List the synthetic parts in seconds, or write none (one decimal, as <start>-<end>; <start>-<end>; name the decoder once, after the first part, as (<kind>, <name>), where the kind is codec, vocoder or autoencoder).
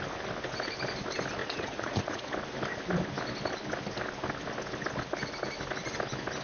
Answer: 1.4-2.3 (vocoder, Vocos)